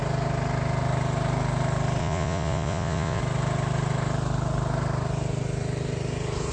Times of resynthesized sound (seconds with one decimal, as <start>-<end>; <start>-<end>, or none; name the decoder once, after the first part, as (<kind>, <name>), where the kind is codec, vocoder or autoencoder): 2.0-3.2 (vocoder, Vocos)